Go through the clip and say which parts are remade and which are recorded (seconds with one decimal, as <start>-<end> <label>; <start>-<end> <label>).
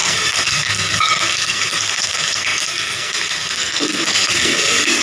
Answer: 0.0-5.0 remade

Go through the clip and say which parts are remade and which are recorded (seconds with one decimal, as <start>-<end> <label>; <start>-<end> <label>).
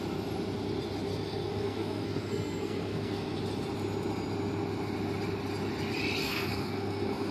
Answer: 0.0-1.1 recorded; 1.1-3.4 remade; 3.4-6.2 recorded; 6.2-7.3 remade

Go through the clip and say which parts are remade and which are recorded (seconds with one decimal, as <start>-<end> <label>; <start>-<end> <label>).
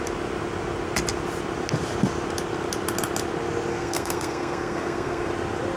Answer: 0.0-3.7 recorded; 3.7-5.3 remade; 5.3-5.8 recorded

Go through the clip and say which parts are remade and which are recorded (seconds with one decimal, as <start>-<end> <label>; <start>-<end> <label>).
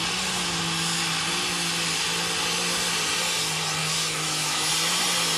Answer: 0.0-3.8 recorded; 3.8-4.7 remade; 4.7-5.4 recorded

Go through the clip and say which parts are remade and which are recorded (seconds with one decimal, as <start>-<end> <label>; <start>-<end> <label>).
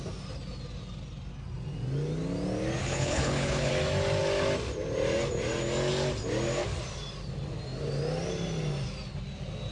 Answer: 0.0-2.8 recorded; 2.8-3.7 remade; 3.7-9.7 recorded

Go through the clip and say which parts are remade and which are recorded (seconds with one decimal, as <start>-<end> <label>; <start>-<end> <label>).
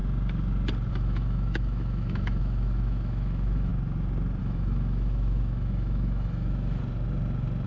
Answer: 0.0-0.9 recorded; 0.9-3.7 remade; 3.7-4.4 recorded; 4.4-6.8 remade; 6.8-7.7 recorded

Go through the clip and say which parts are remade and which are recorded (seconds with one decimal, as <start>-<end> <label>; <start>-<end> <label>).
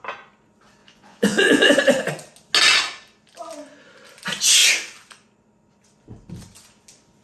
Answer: 0.0-0.8 recorded; 0.8-1.7 remade; 1.7-7.2 recorded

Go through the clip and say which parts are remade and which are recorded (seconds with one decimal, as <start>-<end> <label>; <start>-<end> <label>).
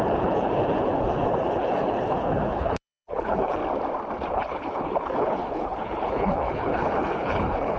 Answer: 0.0-3.6 remade; 3.6-4.3 recorded; 4.3-7.8 remade